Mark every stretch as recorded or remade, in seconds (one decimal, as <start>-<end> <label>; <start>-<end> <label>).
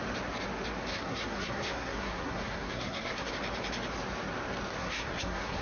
0.0-0.9 recorded; 0.9-3.3 remade; 3.3-4.8 recorded; 4.8-5.6 remade